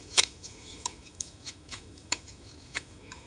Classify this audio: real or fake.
fake